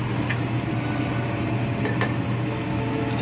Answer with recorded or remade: recorded